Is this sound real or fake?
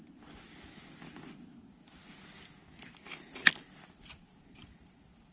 real